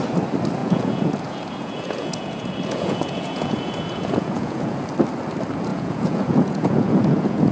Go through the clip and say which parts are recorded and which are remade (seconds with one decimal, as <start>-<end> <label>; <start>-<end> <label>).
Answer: 0.0-0.6 recorded; 0.6-4.8 remade; 4.8-5.7 recorded; 5.7-7.5 remade